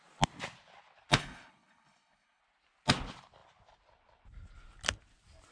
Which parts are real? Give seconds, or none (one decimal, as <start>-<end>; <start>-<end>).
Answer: 0.0-1.2; 2.4-5.5